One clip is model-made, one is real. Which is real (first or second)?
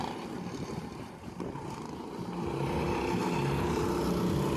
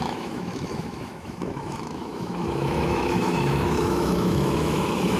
first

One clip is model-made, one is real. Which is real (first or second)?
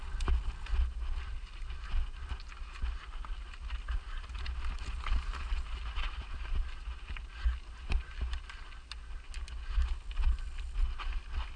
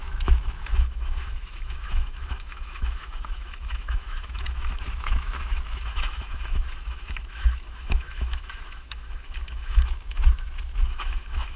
first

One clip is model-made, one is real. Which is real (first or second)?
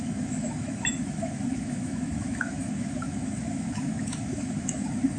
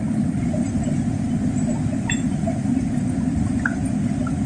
second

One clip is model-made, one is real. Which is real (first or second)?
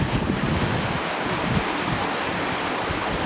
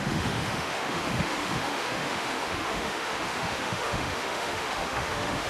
first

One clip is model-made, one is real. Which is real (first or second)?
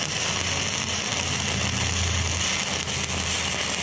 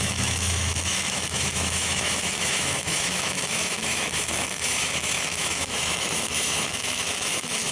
first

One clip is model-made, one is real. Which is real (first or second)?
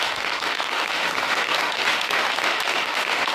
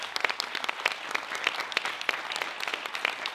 second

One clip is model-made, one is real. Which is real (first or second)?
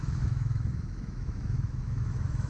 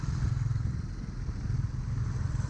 second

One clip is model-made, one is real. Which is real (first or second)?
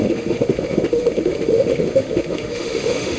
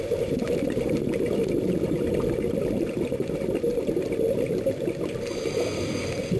second